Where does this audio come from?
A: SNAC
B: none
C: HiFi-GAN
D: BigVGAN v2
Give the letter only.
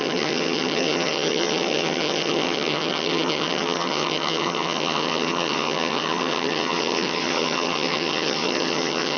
C